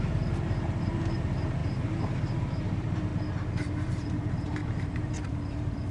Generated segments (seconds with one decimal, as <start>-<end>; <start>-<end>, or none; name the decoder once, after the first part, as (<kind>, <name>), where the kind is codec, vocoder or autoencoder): 0.0-3.1 (vocoder, BigVGAN v2); 3.9-4.6